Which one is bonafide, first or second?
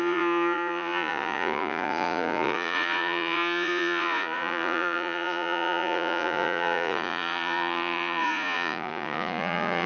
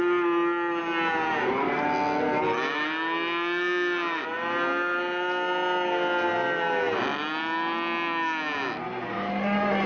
second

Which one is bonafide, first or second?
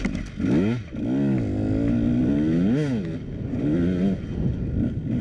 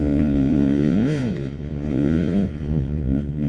first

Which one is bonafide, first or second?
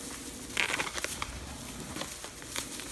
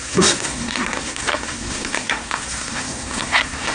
first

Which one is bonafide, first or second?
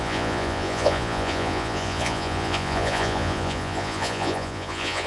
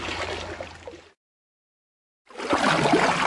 second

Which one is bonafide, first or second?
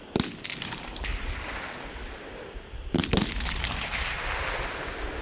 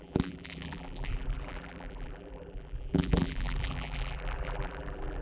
first